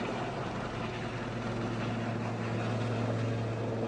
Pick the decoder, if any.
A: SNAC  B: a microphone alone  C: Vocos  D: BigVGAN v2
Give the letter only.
B